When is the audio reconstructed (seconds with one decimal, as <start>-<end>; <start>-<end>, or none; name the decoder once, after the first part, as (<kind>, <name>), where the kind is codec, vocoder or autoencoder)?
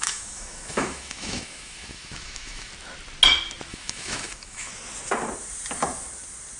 0.0-2.7 (autoencoder, DAC-VAE); 3.7-4.7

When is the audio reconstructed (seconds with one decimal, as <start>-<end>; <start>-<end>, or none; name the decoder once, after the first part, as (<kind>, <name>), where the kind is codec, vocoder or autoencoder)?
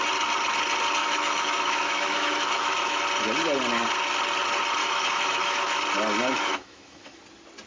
1.0-3.0 (autoencoder, DAC-VAE); 4.8-5.8; 6.3-7.2